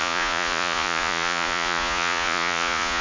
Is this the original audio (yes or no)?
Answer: no